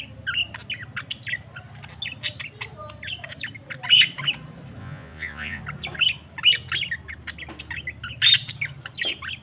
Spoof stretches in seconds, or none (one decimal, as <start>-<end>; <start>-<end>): 4.8-5.6